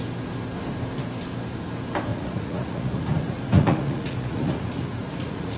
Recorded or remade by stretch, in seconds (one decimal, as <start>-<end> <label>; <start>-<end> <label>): 0.0-2.1 recorded; 2.1-5.6 remade